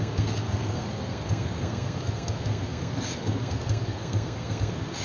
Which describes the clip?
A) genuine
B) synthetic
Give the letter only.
B